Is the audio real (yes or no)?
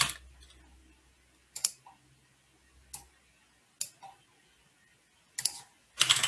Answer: yes